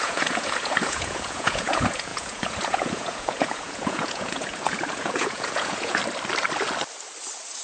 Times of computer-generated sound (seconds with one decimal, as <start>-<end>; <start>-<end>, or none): 0.0-6.0